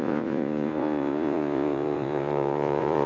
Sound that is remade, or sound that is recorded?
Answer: remade